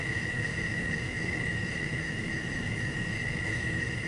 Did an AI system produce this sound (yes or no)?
yes